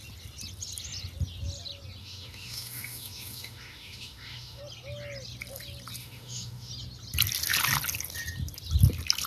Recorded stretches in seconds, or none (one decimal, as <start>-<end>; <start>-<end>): 0.0-2.0; 4.6-6.0; 6.7-9.3